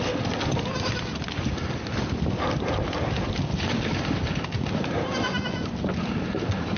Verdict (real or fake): real